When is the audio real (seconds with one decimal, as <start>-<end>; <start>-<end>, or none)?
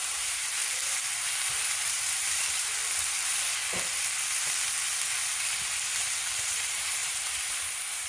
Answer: 0.6-1.5; 2.8-6.4